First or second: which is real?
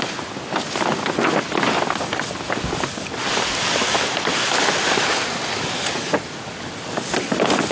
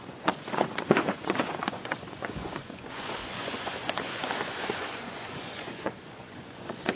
first